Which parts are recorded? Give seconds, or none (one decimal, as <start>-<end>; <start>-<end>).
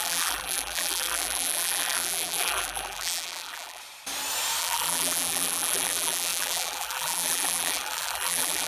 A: 3.8-4.6